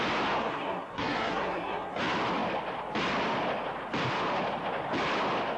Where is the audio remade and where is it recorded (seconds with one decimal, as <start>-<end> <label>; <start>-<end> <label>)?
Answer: 0.0-0.4 recorded; 0.4-2.0 remade; 2.0-5.6 recorded